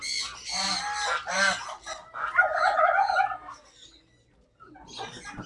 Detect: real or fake real